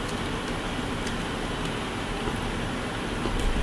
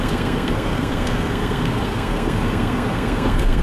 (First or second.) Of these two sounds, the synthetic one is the second